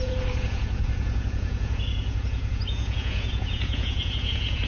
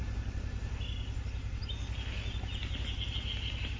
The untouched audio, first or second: second